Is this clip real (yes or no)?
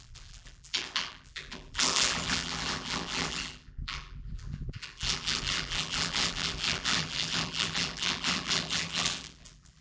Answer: no